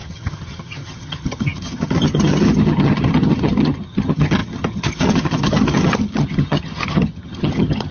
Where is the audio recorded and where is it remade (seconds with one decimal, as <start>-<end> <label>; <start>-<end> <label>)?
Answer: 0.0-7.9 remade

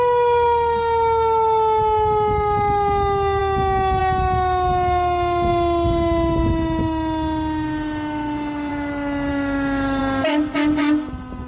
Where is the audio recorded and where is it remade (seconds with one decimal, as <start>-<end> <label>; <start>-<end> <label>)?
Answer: 0.0-9.3 recorded; 9.3-10.0 remade; 10.0-11.5 recorded

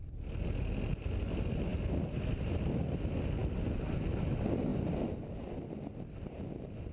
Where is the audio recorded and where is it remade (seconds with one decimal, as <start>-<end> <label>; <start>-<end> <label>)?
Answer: 0.0-6.9 recorded

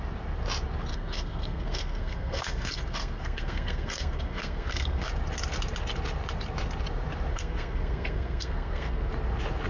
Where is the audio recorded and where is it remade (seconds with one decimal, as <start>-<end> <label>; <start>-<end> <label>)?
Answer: 0.0-0.9 recorded; 0.9-5.1 remade; 5.1-7.3 recorded; 7.3-9.1 remade; 9.1-9.7 recorded

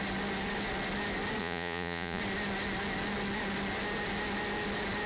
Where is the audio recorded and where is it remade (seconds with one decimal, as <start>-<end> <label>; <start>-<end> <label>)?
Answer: 0.0-1.4 recorded; 1.4-2.2 remade; 2.2-5.1 recorded